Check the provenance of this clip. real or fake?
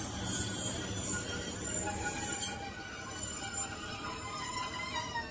real